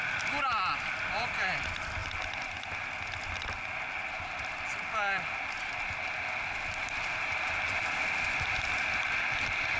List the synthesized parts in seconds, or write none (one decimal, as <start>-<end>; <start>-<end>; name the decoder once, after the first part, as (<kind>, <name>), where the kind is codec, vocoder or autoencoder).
none